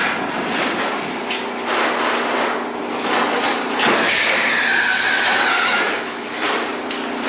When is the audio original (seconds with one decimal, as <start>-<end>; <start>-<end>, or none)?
0.0-5.7; 6.4-7.3